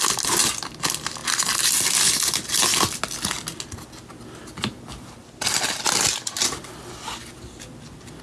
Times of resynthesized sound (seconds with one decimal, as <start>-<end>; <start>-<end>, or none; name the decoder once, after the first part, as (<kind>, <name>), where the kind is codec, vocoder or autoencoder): none